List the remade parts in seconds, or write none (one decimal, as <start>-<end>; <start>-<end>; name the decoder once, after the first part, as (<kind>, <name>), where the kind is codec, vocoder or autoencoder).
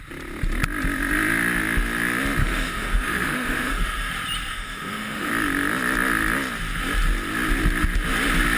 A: 2.4-4.1 (autoencoder, DAC-VAE); 4.5-5.3